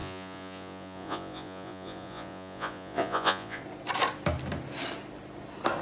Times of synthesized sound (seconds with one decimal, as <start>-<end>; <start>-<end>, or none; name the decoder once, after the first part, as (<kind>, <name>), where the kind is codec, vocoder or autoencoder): 0.0-3.6 (vocoder, Vocos)